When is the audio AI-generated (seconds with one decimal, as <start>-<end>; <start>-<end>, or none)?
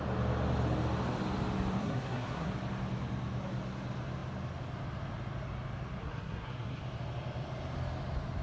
1.8-2.5; 6.0-6.8